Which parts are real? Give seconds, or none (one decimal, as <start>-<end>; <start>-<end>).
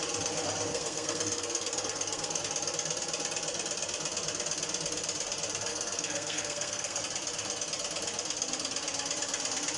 0.0-0.7; 2.4-5.7; 7.0-9.8